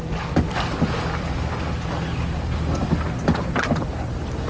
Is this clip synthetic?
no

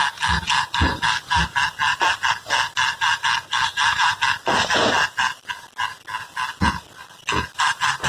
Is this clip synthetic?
no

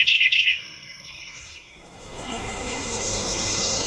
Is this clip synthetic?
yes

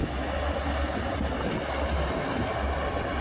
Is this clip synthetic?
no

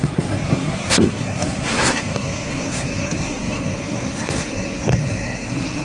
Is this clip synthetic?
yes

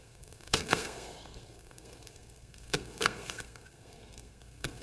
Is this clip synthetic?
yes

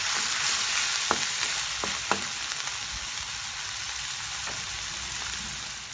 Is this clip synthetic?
no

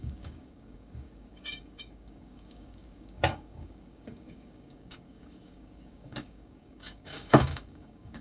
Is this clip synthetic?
yes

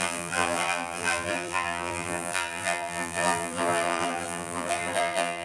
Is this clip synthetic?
yes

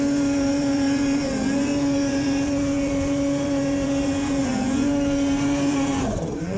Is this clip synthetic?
yes